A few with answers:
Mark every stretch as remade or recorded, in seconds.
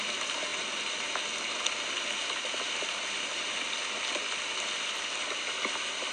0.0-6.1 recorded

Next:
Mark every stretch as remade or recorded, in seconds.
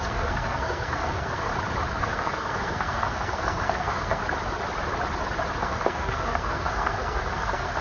0.0-1.5 remade; 1.5-2.0 recorded; 2.0-4.2 remade; 4.2-5.6 recorded; 5.6-7.8 remade